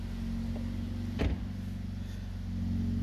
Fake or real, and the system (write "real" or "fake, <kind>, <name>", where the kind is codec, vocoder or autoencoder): real